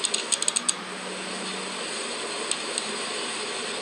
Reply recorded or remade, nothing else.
recorded